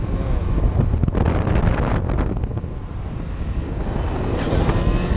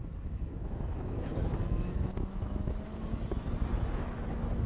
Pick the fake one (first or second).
second